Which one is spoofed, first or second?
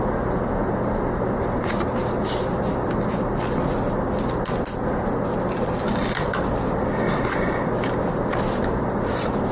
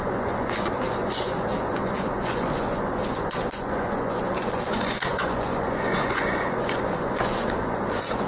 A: second